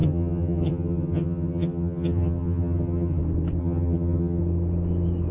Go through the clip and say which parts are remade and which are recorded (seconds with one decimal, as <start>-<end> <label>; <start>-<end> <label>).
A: 0.0-3.2 remade; 3.2-3.6 recorded; 3.6-4.4 remade; 4.4-5.3 recorded